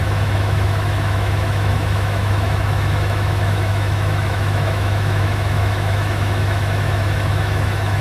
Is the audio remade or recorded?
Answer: remade